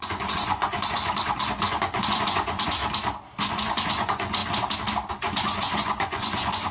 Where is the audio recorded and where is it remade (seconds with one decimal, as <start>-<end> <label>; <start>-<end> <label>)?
0.0-2.8 remade; 2.8-3.4 recorded; 3.4-4.4 remade; 4.4-5.1 recorded; 5.1-6.7 remade